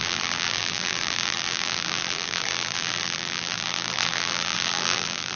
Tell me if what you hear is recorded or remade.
remade